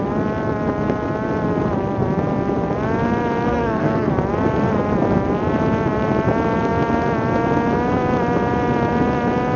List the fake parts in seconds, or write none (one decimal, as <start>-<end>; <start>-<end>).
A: 3.5-4.1